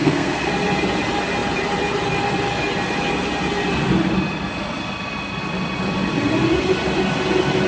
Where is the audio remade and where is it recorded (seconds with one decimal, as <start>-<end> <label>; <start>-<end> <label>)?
0.0-0.5 remade; 0.5-7.7 recorded